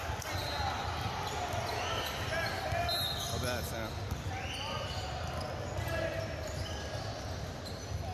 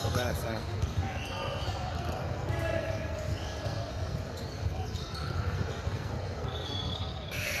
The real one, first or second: first